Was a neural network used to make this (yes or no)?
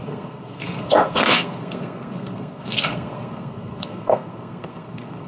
yes